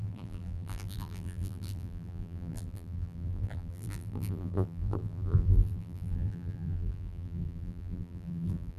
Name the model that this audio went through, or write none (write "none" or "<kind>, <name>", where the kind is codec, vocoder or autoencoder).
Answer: vocoder, BigVGAN v2